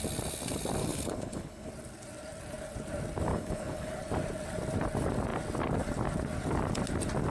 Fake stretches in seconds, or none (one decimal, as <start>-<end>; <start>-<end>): 0.8-1.7; 3.3-3.9